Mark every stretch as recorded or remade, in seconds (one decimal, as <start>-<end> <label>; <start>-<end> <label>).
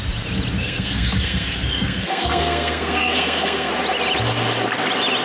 0.0-0.6 recorded; 0.6-3.7 remade; 3.7-5.2 recorded